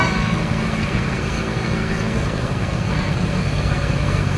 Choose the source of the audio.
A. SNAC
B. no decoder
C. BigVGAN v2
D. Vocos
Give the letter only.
A